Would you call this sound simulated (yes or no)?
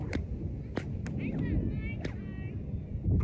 no